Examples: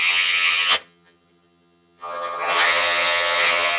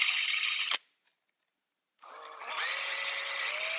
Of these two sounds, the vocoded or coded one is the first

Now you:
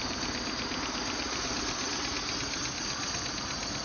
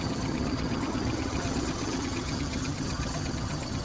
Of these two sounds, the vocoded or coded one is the second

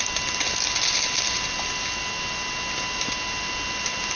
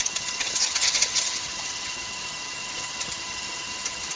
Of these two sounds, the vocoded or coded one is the second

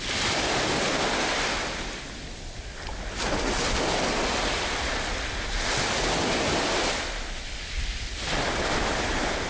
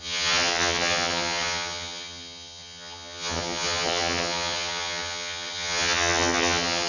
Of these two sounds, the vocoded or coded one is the second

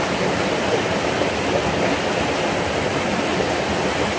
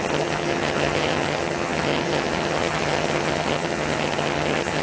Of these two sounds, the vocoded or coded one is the second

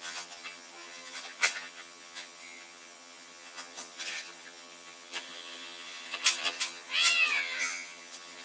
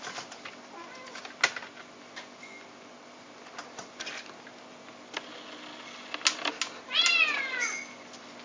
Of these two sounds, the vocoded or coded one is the first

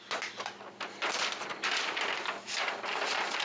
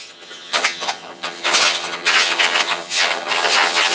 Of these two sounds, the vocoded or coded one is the second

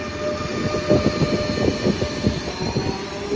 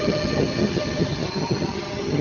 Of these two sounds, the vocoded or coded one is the second